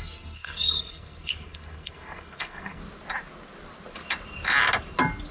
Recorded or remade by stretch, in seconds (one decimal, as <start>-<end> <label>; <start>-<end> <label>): 0.0-2.8 remade; 2.8-5.3 recorded